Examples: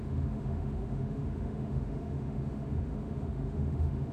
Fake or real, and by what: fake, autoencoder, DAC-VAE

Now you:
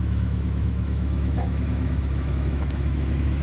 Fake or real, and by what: fake, autoencoder, DAC-VAE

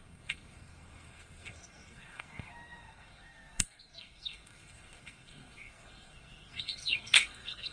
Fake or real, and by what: fake, codec, SNAC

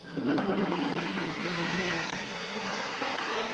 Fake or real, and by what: fake, codec, SNAC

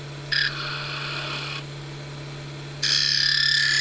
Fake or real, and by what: real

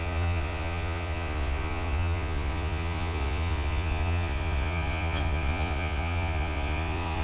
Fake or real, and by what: fake, vocoder, Vocos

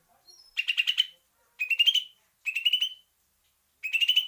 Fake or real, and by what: real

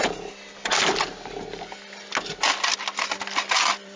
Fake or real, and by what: real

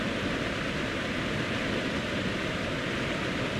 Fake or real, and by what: real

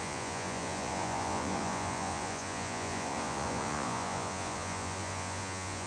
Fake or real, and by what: fake, vocoder, Vocos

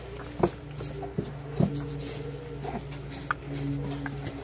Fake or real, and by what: real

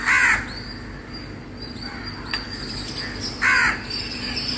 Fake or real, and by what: real